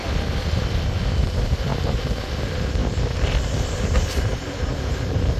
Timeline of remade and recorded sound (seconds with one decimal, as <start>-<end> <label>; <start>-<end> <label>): 0.0-5.4 recorded